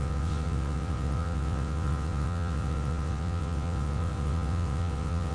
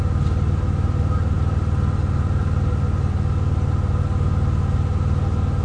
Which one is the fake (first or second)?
first